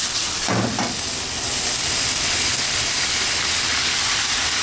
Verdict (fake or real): real